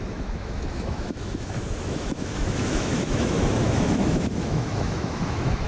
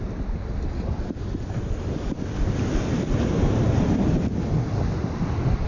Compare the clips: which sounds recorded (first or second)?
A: second